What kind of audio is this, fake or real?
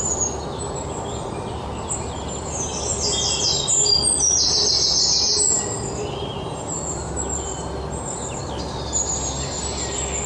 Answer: real